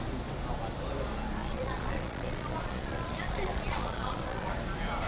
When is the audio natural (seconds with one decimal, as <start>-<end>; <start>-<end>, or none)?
0.0-1.4; 4.5-5.1